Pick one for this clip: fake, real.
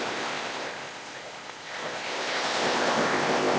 fake